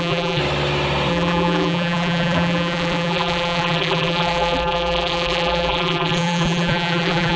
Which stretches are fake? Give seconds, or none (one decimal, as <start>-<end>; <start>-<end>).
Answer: 0.0-0.4; 1.1-7.4